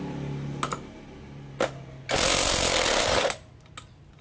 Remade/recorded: recorded